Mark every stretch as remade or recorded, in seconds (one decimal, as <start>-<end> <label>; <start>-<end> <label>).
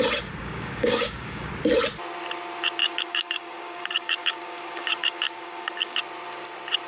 0.0-0.4 recorded; 0.4-1.5 remade; 1.5-2.8 recorded; 2.8-6.0 remade; 6.0-6.9 recorded